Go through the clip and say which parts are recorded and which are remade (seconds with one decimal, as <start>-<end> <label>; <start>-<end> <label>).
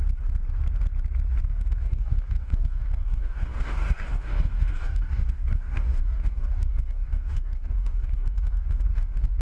0.0-1.4 recorded; 1.4-9.4 remade